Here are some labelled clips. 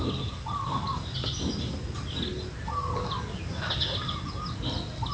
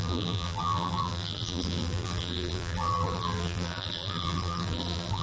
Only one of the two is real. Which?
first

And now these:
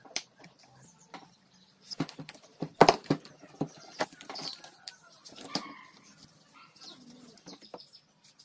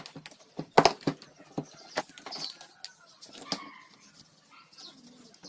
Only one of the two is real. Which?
second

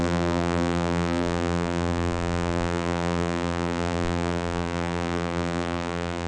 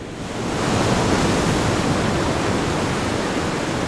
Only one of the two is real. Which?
second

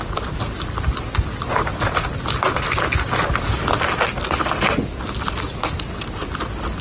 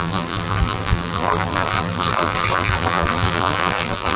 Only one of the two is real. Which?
first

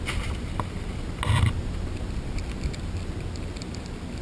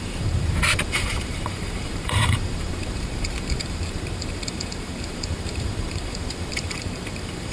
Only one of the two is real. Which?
first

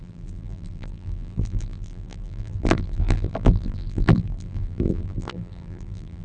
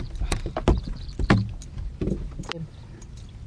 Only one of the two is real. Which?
second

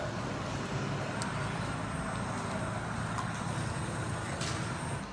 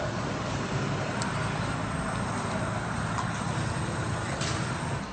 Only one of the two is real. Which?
first